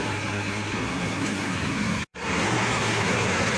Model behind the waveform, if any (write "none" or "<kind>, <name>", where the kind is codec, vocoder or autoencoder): codec, SNAC